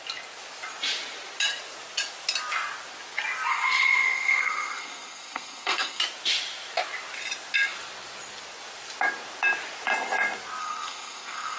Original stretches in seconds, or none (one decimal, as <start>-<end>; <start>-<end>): 0.0-3.5; 6.0-10.6